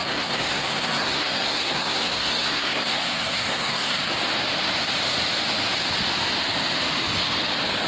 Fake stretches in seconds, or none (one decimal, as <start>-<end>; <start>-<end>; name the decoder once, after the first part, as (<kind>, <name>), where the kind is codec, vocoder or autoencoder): 0.0-4.1 (codec, SNAC)